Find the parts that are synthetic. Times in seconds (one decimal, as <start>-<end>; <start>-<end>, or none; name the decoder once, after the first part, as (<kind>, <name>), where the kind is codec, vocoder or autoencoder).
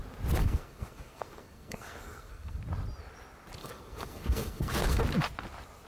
0.4-2.6 (codec, SNAC); 3.6-5.0